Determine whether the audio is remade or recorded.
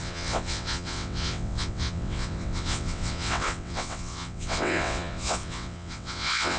remade